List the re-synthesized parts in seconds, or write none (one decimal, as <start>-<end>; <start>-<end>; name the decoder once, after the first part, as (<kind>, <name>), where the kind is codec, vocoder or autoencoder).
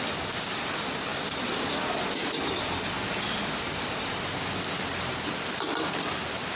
none